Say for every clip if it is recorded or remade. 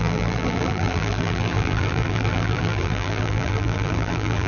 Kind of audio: remade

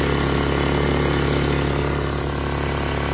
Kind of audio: recorded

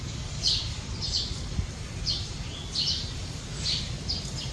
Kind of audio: recorded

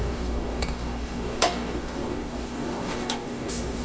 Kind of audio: remade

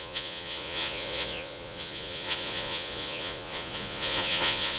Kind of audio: remade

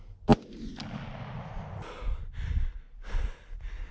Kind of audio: recorded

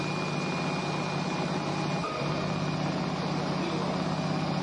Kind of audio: recorded